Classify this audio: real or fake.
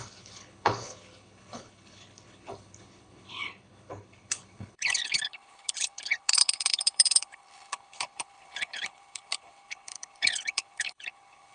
fake